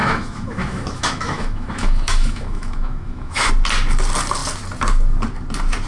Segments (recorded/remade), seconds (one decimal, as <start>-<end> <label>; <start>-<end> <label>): 0.0-3.5 remade; 3.5-5.9 recorded